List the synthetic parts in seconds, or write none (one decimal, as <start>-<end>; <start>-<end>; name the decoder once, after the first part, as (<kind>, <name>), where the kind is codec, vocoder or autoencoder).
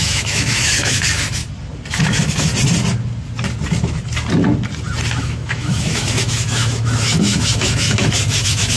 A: 0.0-1.4 (autoencoder, DAC-VAE); 1.9-2.5; 5.2-8.8